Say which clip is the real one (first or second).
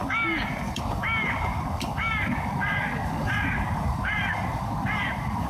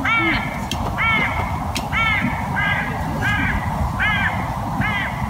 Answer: second